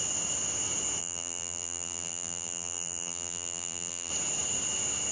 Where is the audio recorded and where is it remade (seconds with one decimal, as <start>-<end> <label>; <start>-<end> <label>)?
0.0-1.0 recorded; 1.0-4.1 remade; 4.1-5.1 recorded